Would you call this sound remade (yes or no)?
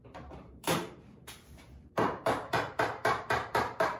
yes